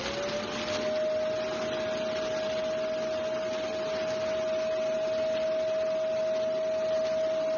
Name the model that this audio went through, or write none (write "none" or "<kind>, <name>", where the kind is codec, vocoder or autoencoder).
none